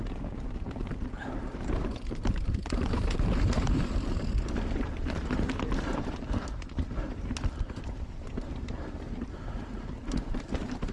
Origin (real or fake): fake